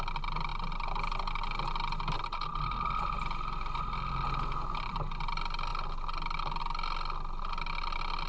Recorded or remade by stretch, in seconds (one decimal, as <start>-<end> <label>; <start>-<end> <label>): 0.0-8.3 recorded